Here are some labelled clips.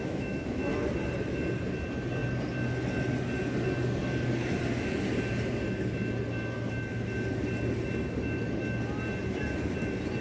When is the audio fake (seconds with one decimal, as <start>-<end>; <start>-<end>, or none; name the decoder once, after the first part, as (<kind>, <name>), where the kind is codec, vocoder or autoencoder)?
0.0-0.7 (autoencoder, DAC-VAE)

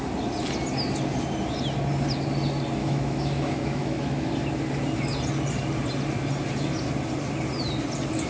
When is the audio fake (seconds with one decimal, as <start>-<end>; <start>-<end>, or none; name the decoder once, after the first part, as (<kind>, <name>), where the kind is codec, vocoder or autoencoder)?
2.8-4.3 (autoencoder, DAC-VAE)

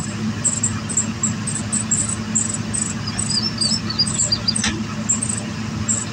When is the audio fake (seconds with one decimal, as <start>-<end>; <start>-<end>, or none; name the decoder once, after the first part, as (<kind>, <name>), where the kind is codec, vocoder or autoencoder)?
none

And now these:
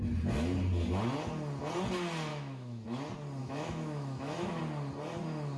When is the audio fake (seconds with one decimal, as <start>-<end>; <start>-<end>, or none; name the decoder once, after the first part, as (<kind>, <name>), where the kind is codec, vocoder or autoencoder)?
2.3-2.8 (autoencoder, DAC-VAE); 3.4-4.6

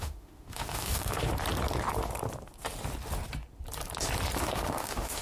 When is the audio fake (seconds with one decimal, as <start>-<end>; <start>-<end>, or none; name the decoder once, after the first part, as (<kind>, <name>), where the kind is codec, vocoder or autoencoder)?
0.0-1.3 (autoencoder, DAC-VAE); 4.4-5.2

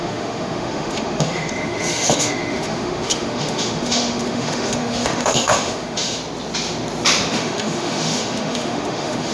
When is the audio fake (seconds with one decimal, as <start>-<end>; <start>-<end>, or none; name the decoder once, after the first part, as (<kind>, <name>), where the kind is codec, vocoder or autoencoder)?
0.0-6.2 (autoencoder, DAC-VAE); 7.3-9.3